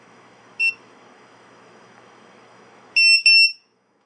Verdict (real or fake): fake